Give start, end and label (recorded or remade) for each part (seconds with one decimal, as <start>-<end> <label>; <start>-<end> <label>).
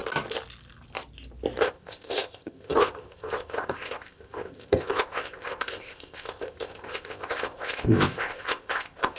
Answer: 0.0-1.6 recorded; 1.6-9.2 remade